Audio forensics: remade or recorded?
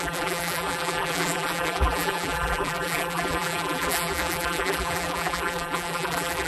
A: remade